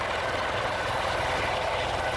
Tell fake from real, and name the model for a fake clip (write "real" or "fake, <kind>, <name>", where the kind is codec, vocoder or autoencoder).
real